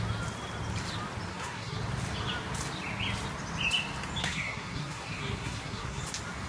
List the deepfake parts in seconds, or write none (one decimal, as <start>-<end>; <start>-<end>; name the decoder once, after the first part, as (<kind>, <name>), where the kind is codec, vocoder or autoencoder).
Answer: 1.3-1.8 (codec, SNAC); 4.2-6.0